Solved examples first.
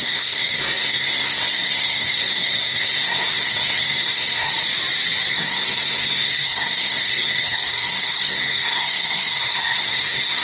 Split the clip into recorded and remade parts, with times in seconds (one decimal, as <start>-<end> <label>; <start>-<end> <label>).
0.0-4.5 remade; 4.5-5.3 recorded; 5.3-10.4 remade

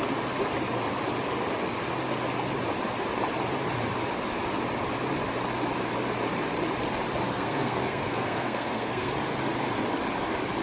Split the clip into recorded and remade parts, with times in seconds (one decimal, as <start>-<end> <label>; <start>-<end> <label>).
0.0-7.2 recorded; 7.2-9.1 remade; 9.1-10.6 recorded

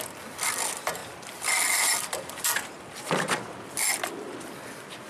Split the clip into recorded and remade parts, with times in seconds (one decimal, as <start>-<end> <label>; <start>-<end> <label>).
0.0-5.1 recorded

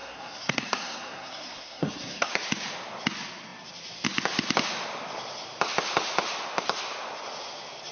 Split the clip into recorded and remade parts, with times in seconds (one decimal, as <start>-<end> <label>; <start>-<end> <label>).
0.0-2.3 remade; 2.3-7.9 recorded

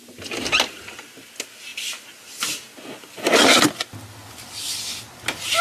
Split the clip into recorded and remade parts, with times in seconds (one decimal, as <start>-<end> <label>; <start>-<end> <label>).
0.0-5.6 recorded